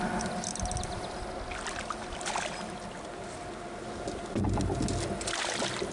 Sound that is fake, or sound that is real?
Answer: real